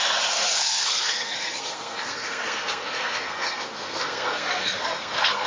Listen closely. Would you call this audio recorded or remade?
remade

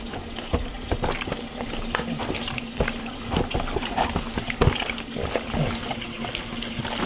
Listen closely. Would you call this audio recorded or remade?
recorded